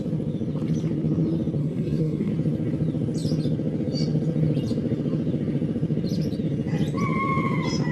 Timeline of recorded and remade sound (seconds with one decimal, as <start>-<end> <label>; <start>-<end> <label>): 0.0-1.6 recorded; 1.6-2.3 remade; 2.3-7.9 recorded